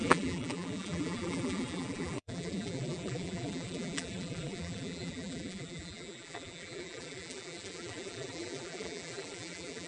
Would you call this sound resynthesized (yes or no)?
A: yes